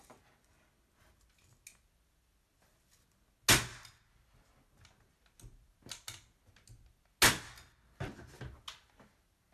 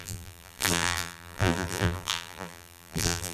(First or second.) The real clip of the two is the first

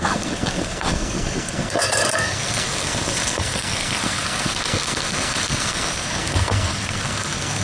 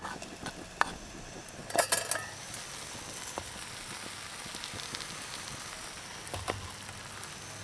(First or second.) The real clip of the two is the second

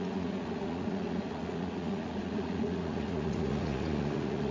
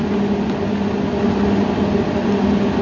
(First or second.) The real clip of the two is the second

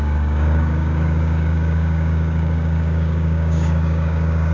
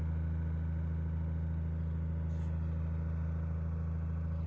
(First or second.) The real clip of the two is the second